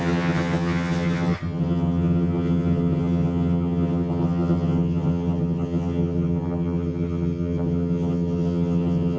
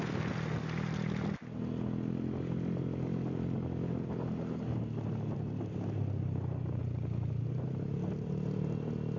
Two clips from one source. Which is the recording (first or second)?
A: second